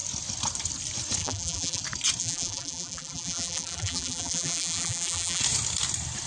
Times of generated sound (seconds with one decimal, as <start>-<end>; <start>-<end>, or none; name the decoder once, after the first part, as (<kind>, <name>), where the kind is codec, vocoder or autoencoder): 1.2-1.8 (vocoder, BigVGAN v2); 2.2-5.4